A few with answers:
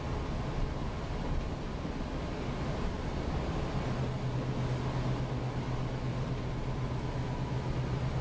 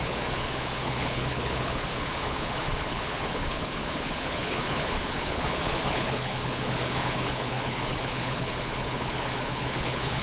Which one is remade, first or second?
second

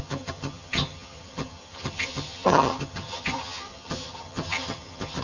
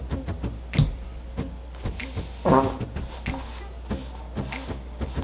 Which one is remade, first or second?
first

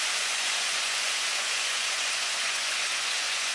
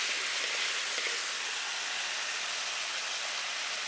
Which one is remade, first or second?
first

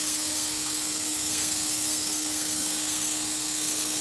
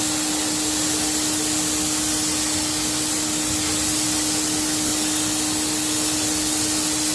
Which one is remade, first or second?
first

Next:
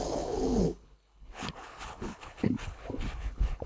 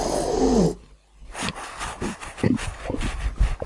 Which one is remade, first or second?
first